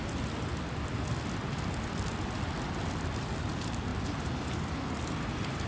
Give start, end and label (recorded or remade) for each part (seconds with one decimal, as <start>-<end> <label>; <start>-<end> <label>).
0.0-5.7 recorded